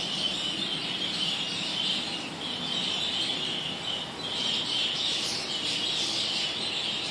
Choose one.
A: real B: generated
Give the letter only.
A